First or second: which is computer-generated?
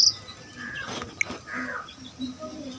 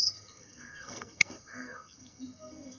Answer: second